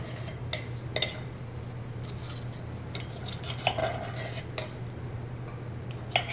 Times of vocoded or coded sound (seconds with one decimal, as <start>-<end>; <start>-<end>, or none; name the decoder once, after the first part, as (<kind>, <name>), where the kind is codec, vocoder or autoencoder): none